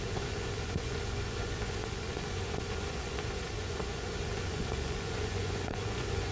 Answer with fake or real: fake